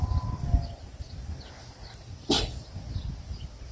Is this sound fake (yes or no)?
no